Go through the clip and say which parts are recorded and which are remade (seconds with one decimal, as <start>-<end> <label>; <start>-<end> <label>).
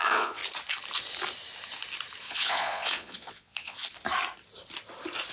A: 0.0-0.4 remade; 0.4-2.2 recorded; 2.2-3.8 remade; 3.8-5.3 recorded